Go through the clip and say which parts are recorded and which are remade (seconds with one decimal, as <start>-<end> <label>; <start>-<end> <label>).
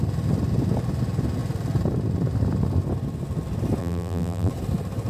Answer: 0.0-3.8 recorded; 3.8-4.5 remade; 4.5-5.1 recorded